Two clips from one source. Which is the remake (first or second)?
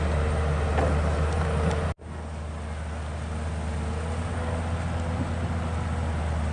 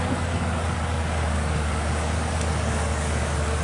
second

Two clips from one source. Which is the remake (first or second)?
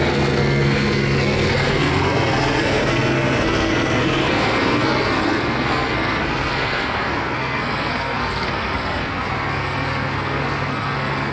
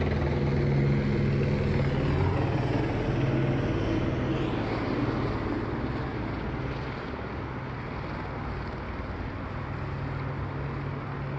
first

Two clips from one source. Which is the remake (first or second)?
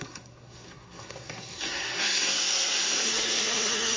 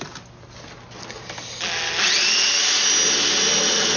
first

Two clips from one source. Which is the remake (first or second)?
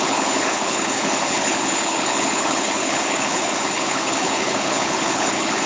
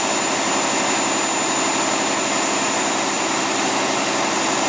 first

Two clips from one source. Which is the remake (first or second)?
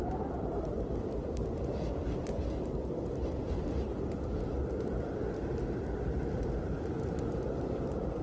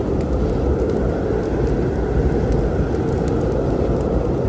first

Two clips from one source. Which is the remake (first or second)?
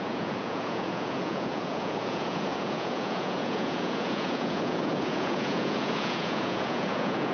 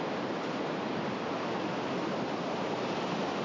first